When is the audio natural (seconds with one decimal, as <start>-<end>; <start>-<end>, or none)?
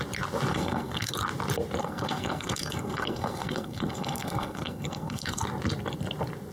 0.0-0.5; 1.1-1.8; 5.4-6.5